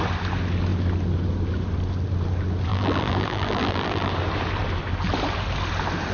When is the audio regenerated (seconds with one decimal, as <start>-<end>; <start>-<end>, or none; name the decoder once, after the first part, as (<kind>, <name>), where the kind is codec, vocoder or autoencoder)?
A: 2.7-4.1 (vocoder, BigVGAN v2)